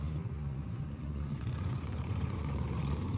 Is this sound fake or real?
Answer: fake